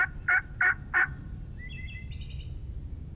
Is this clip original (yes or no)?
yes